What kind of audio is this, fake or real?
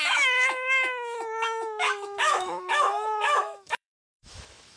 fake